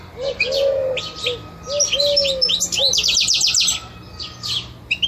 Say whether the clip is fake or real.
real